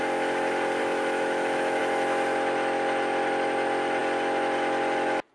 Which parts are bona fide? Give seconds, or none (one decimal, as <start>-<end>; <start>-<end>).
0.0-0.8; 1.8-5.3